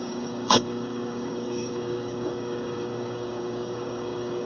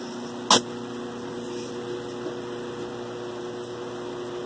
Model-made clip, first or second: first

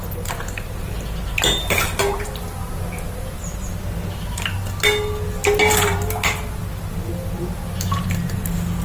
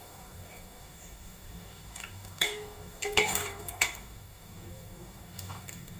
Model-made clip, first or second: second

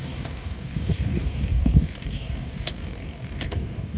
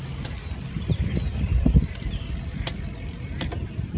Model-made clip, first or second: first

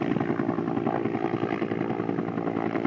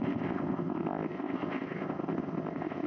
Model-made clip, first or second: second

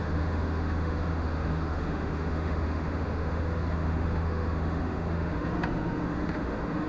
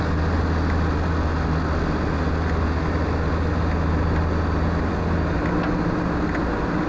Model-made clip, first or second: first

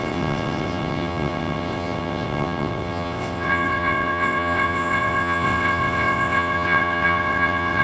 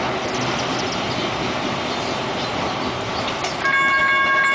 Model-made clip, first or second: first